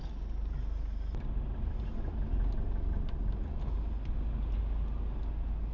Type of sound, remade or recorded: recorded